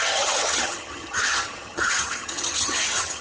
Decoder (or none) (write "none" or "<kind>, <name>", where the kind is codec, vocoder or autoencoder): vocoder, HiFi-GAN